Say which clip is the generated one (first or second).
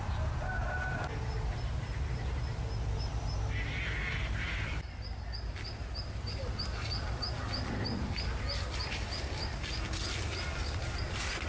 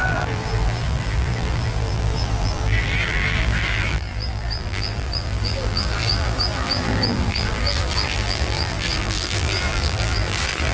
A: second